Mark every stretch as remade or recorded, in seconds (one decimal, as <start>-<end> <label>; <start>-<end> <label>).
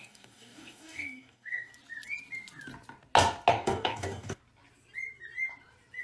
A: 0.0-1.7 remade; 1.7-3.5 recorded; 3.5-4.4 remade; 4.4-6.0 recorded